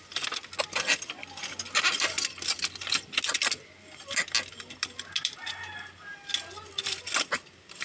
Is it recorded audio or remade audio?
recorded